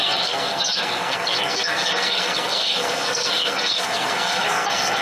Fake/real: fake